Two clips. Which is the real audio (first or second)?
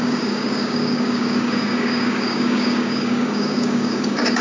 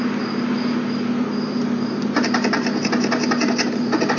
second